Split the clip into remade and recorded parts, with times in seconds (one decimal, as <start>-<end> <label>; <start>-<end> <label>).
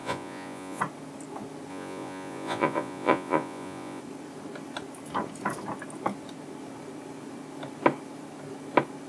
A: 0.0-0.8 remade; 0.8-1.7 recorded; 1.7-4.0 remade; 4.0-9.1 recorded